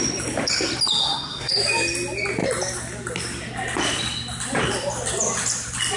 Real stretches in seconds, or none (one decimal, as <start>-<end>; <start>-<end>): 0.0-1.0; 1.5-6.0